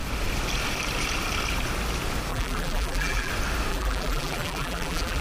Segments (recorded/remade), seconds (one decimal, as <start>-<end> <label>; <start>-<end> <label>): 0.0-2.3 recorded; 2.3-3.3 remade; 3.3-3.7 recorded; 3.7-5.2 remade